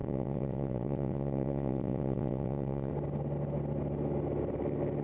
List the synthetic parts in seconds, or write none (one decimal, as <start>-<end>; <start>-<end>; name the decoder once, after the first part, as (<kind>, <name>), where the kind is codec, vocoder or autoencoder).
0.0-2.9 (vocoder, WaveNeXt)